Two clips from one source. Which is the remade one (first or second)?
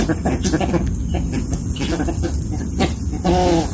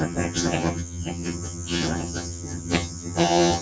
second